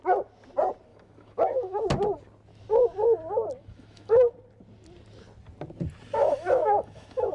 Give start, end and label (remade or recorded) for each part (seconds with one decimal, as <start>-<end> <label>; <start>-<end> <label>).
0.0-0.9 recorded; 0.9-1.8 remade; 1.8-3.6 recorded; 3.6-4.3 remade; 4.3-6.2 recorded; 6.2-7.3 remade